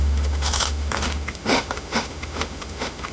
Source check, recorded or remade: remade